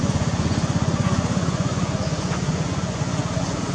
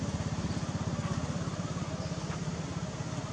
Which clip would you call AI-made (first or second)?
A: first